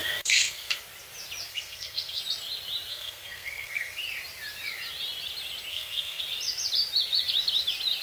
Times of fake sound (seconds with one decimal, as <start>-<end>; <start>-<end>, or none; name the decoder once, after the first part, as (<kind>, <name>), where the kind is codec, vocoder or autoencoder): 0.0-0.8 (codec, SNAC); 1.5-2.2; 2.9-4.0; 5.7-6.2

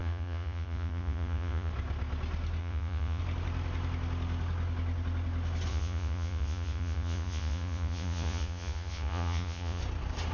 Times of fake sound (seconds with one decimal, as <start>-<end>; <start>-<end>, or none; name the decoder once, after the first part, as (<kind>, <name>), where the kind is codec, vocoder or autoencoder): 0.0-1.7 (vocoder, Vocos); 2.6-3.2; 5.7-9.8

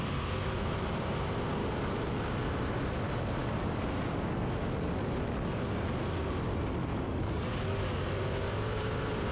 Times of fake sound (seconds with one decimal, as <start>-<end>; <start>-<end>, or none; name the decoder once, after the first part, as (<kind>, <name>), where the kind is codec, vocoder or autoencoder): 1.6-2.3 (codec, DAC); 3.4-4.6; 6.9-7.9

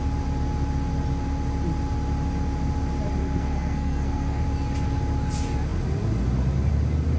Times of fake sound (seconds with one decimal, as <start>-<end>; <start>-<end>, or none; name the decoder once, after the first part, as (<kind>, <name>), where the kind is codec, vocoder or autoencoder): 3.2-4.4 (codec, SNAC)